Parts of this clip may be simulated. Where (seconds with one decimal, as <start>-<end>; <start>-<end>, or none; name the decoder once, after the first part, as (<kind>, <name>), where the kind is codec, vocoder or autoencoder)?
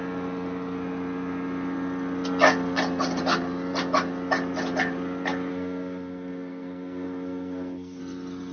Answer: 5.5-8.0 (codec, SNAC)